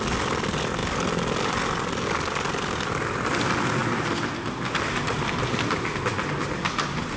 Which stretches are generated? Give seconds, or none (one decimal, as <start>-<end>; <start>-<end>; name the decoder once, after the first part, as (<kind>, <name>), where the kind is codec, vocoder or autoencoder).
none